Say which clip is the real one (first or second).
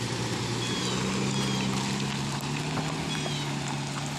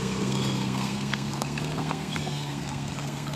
first